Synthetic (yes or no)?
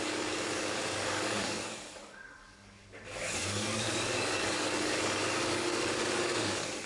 yes